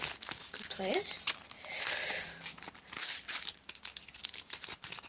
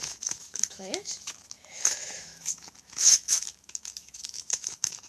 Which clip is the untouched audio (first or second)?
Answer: first